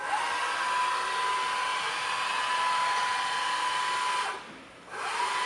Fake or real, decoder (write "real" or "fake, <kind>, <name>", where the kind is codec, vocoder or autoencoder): real